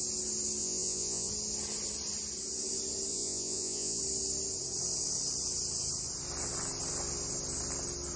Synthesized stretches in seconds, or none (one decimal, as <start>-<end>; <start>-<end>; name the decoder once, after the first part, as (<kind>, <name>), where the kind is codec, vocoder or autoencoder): 0.6-1.3 (vocoder, Vocos); 3.1-4.0